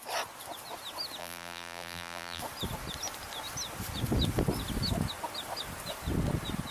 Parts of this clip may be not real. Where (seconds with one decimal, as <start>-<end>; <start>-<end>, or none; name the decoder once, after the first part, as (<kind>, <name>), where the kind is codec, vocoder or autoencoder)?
1.2-2.4 (vocoder, BigVGAN v2)